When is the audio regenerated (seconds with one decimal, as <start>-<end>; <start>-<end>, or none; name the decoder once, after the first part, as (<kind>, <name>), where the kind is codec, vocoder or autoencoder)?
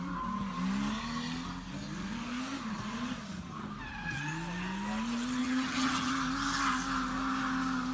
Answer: 5.4-6.1 (vocoder, HiFi-GAN)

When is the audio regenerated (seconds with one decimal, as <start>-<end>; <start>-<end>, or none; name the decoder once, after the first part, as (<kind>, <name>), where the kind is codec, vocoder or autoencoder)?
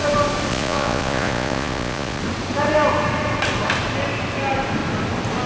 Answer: 0.5-2.2 (vocoder, Vocos)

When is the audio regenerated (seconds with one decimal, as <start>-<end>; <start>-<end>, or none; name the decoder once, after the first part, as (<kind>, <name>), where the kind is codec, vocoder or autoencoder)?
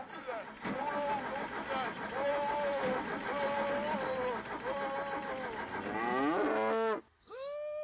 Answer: none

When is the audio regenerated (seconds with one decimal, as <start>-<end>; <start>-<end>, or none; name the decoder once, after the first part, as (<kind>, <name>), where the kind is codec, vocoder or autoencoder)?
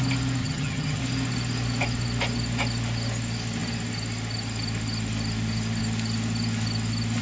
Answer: 0.4-1.0 (vocoder, HiFi-GAN)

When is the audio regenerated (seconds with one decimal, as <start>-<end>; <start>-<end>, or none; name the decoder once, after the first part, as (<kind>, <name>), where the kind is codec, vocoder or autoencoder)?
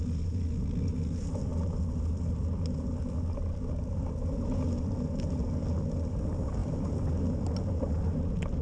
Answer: none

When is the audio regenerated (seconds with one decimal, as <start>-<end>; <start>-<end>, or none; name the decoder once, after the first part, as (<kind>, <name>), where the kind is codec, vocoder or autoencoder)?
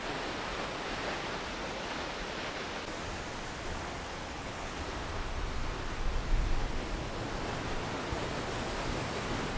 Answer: 4.2-4.8 (codec, HILCodec)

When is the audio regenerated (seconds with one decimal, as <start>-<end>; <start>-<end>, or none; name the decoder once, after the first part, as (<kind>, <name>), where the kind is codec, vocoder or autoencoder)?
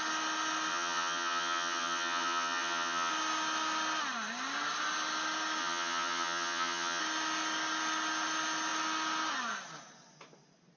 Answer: 0.7-3.1 (vocoder, HiFi-GAN); 5.6-7.0